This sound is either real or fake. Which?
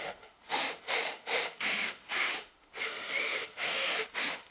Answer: fake